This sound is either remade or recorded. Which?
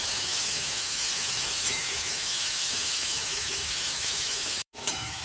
remade